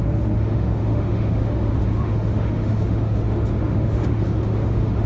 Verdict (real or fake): fake